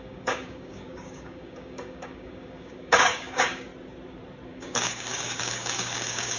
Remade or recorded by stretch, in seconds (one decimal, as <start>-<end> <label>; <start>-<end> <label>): 0.0-3.7 remade; 3.7-4.5 recorded; 4.5-6.4 remade